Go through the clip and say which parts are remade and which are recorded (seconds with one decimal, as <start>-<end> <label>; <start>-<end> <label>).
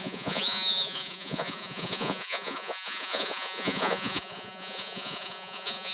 0.0-5.9 remade